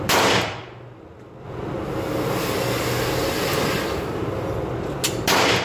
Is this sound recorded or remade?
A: recorded